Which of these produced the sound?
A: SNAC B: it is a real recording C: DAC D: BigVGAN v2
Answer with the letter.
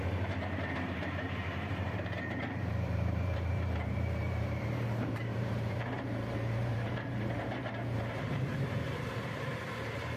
D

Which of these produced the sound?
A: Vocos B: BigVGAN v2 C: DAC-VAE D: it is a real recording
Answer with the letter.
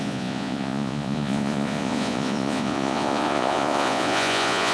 A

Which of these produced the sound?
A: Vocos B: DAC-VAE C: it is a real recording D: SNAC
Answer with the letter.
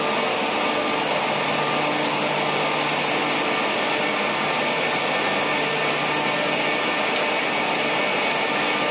C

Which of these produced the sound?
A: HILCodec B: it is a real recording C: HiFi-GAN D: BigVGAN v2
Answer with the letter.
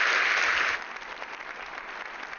B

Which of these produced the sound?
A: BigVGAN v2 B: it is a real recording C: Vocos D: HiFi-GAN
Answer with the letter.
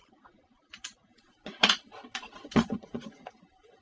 C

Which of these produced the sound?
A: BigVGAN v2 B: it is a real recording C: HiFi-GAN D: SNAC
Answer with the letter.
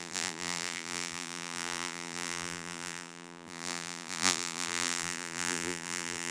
A